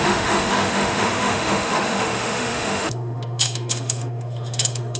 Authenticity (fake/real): fake